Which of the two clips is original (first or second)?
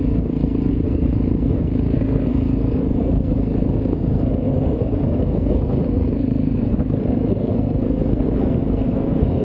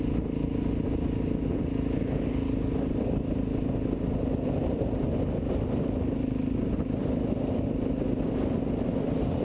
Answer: second